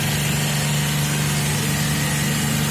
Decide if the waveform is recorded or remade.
recorded